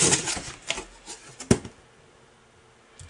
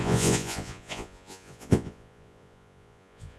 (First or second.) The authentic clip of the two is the first